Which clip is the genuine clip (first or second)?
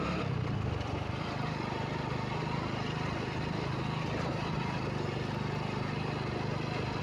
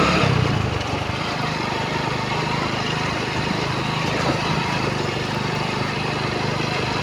first